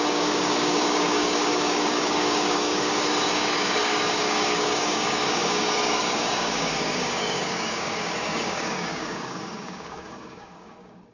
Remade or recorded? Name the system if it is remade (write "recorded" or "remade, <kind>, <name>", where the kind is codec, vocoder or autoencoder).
remade, codec, DAC